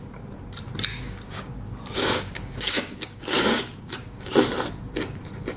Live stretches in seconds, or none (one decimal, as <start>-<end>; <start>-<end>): 0.0-0.9; 4.3-5.6